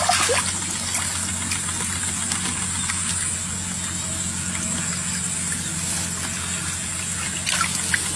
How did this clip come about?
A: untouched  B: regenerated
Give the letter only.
A